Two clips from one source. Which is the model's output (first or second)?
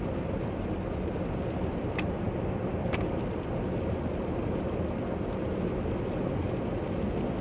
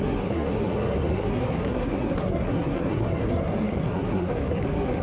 second